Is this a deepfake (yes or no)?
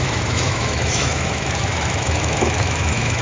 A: yes